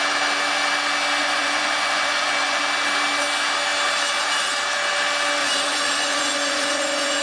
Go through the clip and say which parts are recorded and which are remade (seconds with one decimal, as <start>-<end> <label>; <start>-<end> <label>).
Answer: 0.0-1.2 recorded; 1.2-2.6 remade; 2.6-5.4 recorded; 5.4-7.2 remade